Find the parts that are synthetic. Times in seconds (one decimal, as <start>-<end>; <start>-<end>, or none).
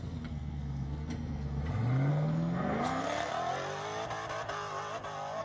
0.0-1.6; 2.1-3.3